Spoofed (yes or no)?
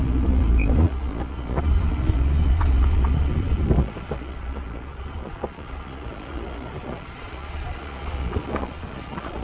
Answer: yes